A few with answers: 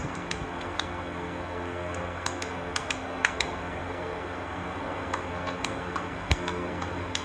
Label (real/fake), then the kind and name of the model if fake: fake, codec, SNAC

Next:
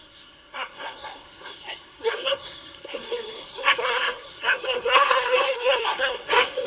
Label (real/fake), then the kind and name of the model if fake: fake, codec, SNAC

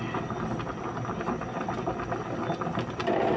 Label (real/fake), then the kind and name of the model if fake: real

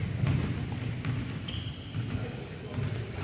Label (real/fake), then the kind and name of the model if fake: real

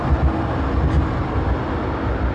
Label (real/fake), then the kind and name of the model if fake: real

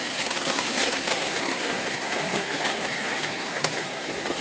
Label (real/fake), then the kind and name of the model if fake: fake, codec, SNAC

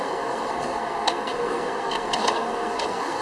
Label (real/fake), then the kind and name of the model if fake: fake, codec, SNAC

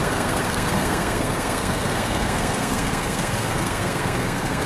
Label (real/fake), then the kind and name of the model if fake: fake, codec, SNAC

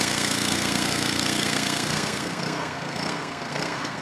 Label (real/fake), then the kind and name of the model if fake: fake, codec, SNAC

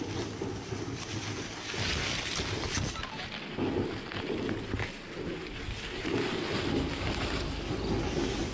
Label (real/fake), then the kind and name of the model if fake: real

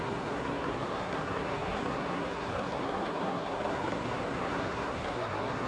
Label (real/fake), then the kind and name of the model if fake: fake, codec, SNAC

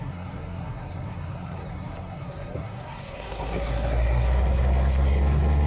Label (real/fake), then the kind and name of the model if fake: fake, codec, SNAC